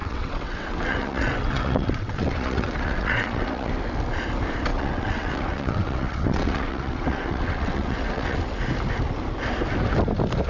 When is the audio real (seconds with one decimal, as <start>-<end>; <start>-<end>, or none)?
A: 3.7-4.7; 8.4-10.5